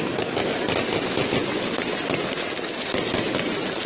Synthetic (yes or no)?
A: no